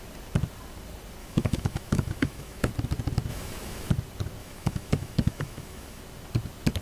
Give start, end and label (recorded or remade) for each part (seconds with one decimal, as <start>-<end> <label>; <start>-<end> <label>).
0.0-1.2 recorded; 1.2-2.7 remade; 2.7-3.3 recorded; 3.3-3.9 remade; 3.9-4.4 recorded; 4.4-6.0 remade; 6.0-6.8 recorded